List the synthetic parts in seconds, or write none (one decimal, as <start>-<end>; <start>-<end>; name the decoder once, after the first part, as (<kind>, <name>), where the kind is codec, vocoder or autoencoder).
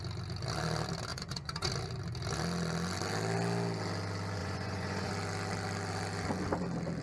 1.1-1.7 (vocoder, Vocos); 4.4-5.1